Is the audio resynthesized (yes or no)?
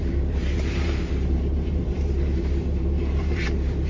yes